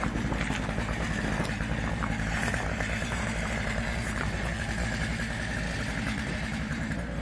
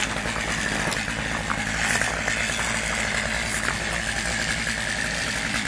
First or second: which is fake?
first